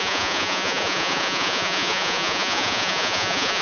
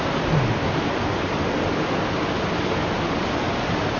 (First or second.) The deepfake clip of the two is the first